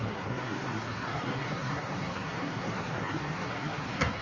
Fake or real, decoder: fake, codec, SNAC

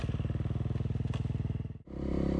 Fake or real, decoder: real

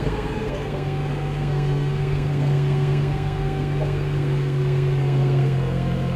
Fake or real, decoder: fake, codec, SNAC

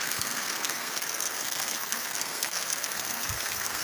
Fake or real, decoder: fake, codec, SNAC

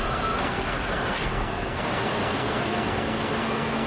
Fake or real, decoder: fake, codec, SNAC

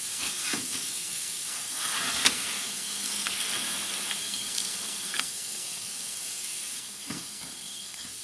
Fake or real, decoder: fake, codec, SNAC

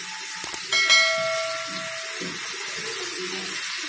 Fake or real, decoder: real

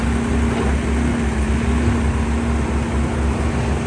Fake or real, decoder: real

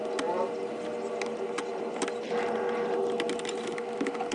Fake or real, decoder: real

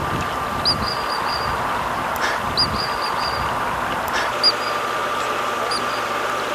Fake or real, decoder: real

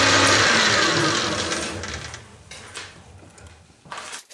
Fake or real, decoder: real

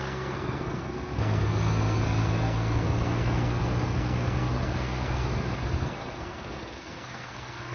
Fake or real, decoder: fake, codec, SNAC